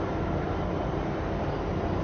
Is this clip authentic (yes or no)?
yes